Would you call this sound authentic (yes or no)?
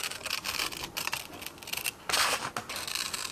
yes